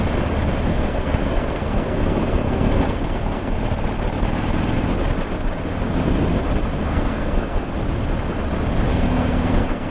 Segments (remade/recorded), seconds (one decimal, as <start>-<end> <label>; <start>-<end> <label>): 0.0-0.7 recorded; 0.7-3.6 remade; 3.6-6.8 recorded; 6.8-7.7 remade; 7.7-8.9 recorded; 8.9-9.9 remade